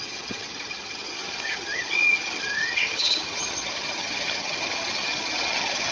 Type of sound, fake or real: fake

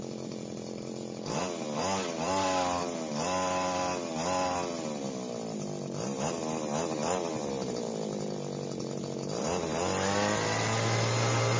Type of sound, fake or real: real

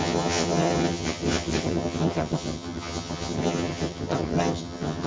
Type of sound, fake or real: fake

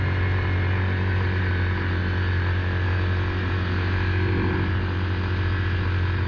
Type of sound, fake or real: real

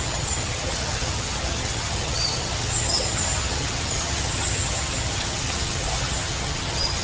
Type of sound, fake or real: fake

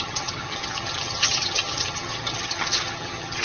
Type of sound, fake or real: fake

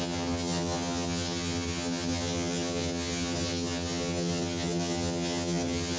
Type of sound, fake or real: fake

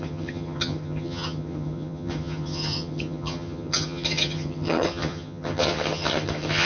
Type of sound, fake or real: fake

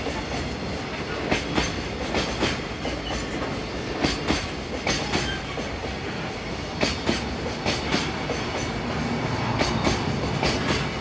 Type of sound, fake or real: real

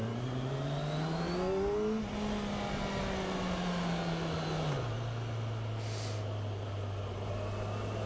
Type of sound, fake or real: real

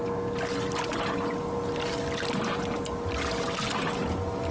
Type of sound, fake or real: real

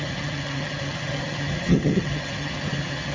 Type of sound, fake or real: fake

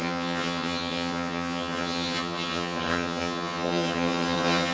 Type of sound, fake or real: fake